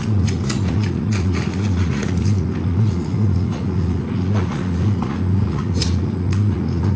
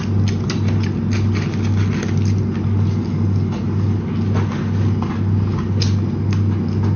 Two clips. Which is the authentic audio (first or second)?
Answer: second